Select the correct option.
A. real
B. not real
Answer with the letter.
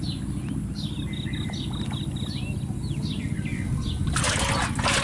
A